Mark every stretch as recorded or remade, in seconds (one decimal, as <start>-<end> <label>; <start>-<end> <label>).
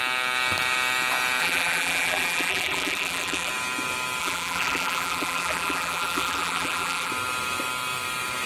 0.0-1.4 recorded; 1.4-3.5 remade; 3.5-4.2 recorded; 4.2-7.1 remade; 7.1-8.5 recorded